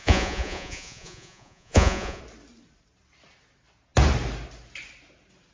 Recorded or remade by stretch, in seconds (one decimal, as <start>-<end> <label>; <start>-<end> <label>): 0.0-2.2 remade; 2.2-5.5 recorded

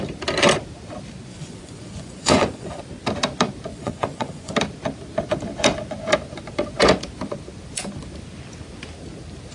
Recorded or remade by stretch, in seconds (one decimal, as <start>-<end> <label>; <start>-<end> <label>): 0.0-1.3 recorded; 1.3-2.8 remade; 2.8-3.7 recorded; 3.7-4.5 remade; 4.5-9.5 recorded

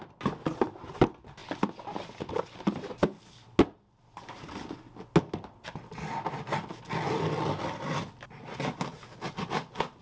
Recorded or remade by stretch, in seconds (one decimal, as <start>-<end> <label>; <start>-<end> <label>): 0.0-10.0 recorded

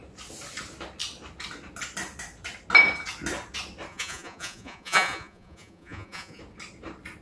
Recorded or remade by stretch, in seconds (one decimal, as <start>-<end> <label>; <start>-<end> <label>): 0.0-3.9 recorded; 3.9-6.4 remade; 6.4-7.2 recorded